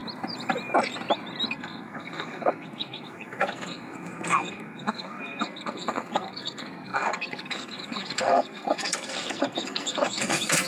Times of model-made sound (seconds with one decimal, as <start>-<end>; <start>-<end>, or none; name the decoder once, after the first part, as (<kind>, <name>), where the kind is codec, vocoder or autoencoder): 1.5-10.7 (codec, SNAC)